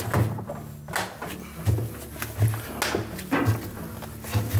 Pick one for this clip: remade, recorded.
recorded